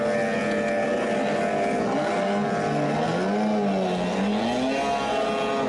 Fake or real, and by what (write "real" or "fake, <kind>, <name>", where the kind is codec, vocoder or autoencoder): real